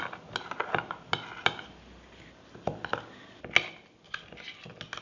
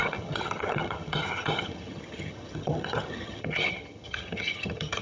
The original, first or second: first